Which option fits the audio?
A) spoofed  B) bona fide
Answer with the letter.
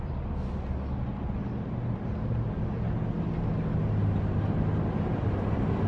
B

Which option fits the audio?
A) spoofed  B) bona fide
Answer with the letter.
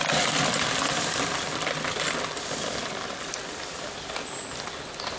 B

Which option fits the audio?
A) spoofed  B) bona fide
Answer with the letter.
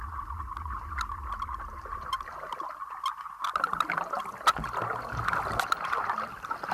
B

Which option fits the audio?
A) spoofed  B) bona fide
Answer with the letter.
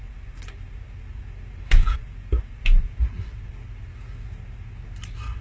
B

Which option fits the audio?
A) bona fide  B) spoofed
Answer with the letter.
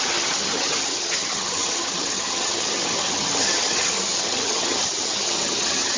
B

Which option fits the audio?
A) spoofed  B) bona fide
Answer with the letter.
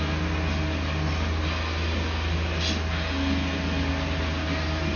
B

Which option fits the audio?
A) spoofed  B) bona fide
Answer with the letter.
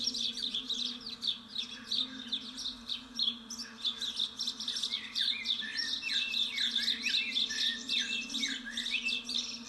B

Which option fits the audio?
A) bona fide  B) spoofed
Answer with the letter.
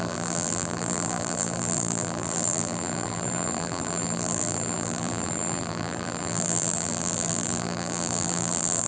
B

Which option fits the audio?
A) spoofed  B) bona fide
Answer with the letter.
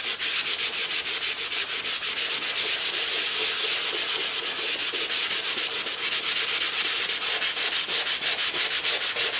B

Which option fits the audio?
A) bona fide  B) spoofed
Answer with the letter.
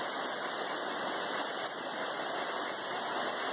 A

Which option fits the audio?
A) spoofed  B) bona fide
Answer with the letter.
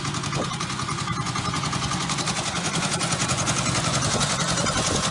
A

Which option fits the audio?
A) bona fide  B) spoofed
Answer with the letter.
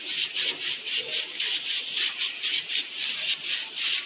A